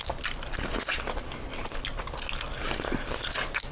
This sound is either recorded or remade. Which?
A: recorded